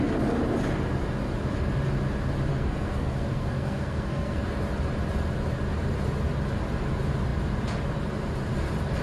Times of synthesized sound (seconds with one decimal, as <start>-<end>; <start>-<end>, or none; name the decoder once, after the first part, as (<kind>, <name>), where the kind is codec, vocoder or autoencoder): 2.5-4.4 (codec, SNAC)